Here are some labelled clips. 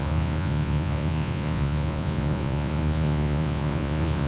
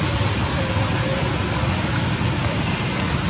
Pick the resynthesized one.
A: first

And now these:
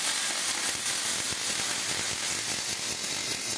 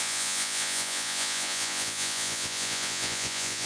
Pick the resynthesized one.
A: second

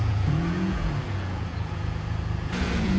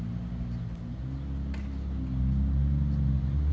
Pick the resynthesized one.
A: first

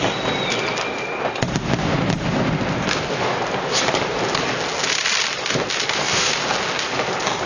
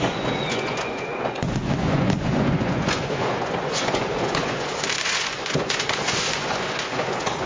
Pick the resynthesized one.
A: second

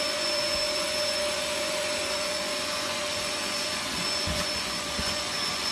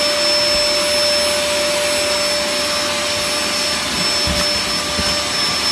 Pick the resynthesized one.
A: first